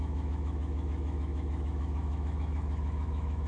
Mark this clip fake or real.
fake